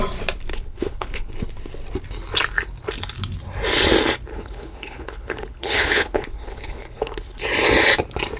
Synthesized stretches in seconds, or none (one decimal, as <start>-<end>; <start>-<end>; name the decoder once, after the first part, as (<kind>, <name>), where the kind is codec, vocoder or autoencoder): 0.5-1.3 (codec, HILCodec); 4.3-7.4